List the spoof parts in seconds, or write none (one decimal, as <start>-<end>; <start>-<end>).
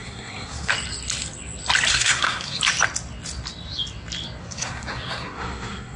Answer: 0.0-0.7; 1.9-2.6; 4.4-6.0